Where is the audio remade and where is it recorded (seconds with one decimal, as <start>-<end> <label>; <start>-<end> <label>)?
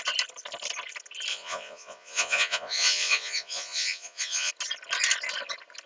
0.0-1.3 recorded; 1.3-4.5 remade; 4.5-5.9 recorded